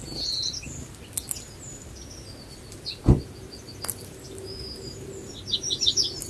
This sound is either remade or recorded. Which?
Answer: recorded